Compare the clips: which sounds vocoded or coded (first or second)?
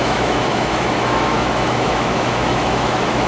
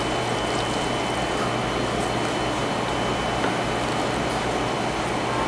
first